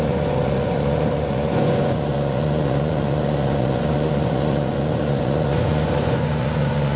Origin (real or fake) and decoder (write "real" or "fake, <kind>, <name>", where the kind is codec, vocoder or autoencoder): fake, vocoder, Vocos